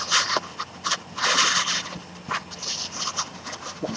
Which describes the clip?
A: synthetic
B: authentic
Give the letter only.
B